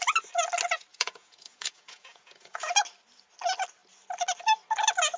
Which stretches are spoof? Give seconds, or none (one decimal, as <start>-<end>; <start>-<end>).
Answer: 0.9-2.7